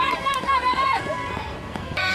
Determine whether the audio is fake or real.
fake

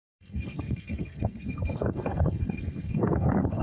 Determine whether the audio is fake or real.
fake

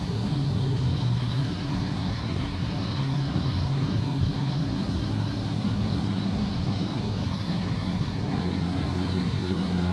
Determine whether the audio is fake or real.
fake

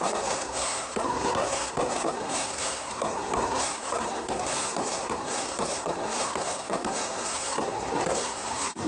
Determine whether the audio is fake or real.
fake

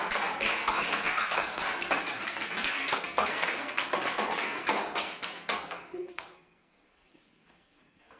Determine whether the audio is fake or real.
fake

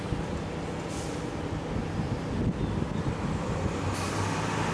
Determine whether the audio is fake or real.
real